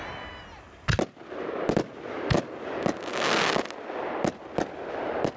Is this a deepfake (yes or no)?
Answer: no